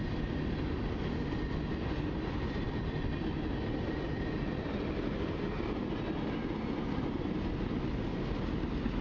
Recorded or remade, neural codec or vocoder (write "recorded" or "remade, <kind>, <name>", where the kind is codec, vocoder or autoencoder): recorded